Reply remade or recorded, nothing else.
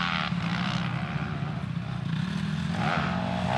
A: recorded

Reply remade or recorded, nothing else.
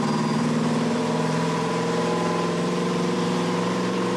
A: remade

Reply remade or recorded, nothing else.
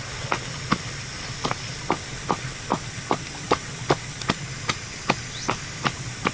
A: recorded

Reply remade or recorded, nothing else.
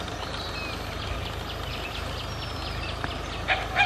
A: recorded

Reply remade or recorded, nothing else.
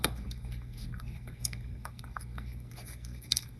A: remade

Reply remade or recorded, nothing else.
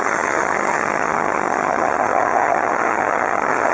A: remade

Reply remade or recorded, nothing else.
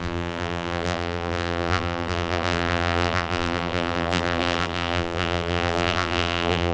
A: remade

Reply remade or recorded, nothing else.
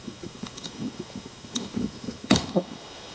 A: remade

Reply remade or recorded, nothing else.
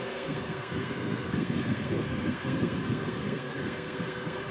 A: remade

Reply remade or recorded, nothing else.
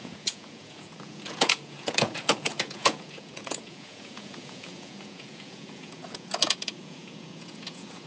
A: remade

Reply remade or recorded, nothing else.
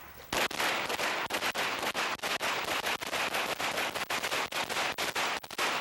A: recorded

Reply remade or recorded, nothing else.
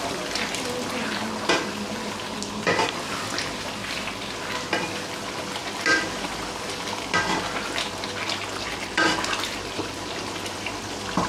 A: recorded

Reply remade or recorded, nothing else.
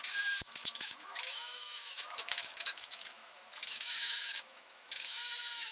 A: remade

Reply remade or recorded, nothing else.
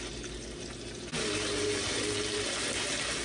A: recorded